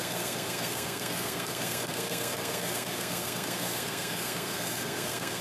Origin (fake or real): fake